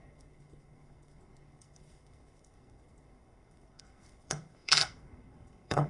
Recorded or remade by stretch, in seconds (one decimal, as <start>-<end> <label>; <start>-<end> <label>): 0.0-5.9 remade